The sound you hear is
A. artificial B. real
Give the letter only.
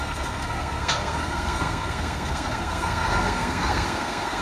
A